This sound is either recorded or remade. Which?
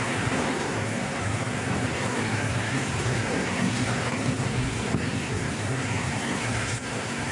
remade